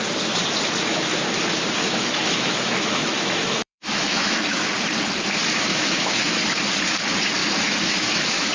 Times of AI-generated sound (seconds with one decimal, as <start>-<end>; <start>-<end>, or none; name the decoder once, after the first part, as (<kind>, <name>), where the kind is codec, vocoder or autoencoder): 1.8-4.7 (autoencoder, DAC-VAE); 5.7-6.4; 7.4-8.5